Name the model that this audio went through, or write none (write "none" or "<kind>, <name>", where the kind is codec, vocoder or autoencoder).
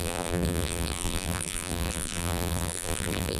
vocoder, BigVGAN v2